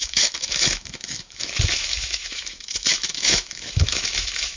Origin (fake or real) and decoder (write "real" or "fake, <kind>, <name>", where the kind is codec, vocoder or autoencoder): fake, autoencoder, DAC-VAE